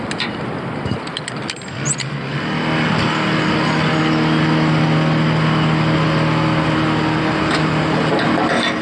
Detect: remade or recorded recorded